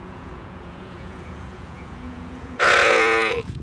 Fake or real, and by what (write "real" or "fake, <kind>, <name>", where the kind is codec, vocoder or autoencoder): fake, vocoder, Vocos